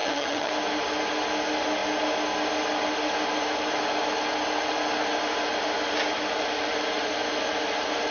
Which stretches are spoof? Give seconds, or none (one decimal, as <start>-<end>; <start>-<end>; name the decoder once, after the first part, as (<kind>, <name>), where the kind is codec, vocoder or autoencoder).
0.0-0.5 (vocoder, HiFi-GAN)